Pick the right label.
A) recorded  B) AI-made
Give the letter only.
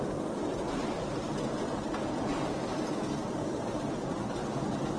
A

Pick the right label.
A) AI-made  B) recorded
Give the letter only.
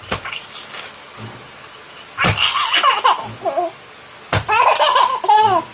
A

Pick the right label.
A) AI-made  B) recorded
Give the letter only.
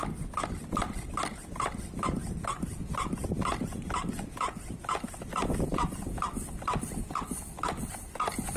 B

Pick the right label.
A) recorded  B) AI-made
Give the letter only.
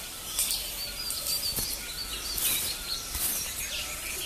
A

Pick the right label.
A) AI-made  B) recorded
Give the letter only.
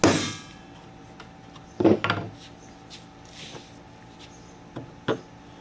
B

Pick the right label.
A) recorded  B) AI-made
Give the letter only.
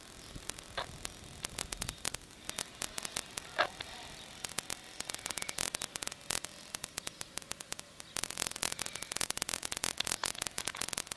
A